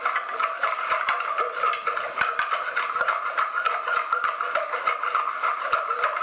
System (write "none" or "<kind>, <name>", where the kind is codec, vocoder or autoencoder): none